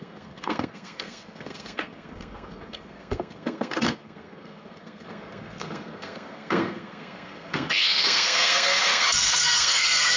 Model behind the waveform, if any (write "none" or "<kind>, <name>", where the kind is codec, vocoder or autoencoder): codec, SNAC